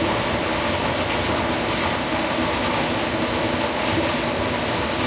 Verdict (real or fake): real